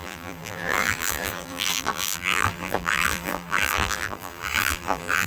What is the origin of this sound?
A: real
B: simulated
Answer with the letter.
B